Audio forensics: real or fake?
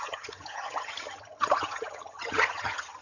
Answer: fake